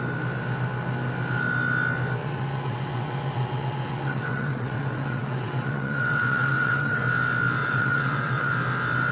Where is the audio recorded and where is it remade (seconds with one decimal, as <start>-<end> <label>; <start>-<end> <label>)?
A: 0.0-2.2 recorded; 2.2-7.0 remade; 7.0-7.6 recorded; 7.6-8.5 remade; 8.5-9.1 recorded